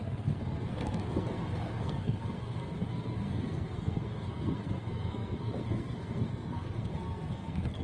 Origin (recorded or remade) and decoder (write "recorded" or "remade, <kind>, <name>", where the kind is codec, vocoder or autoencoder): remade, codec, SNAC